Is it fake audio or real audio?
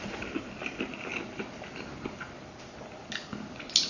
real